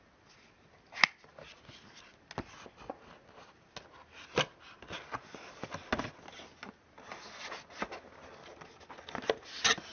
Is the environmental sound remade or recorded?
recorded